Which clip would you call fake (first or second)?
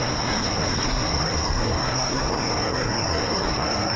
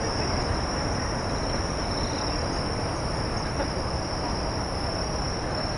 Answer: first